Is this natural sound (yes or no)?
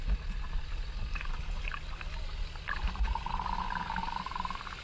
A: yes